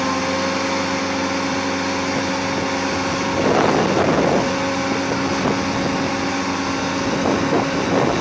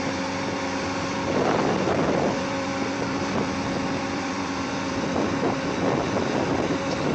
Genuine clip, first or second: first